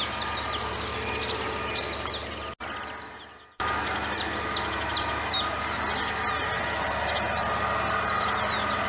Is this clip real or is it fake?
real